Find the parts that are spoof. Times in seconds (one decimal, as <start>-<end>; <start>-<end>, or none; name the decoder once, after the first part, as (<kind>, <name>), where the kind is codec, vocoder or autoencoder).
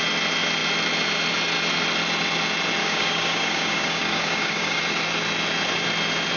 2.8-4.8 (codec, DAC)